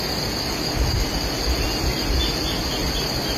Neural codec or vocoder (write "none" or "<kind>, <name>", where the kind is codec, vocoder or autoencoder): none